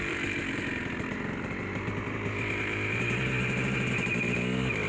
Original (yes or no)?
no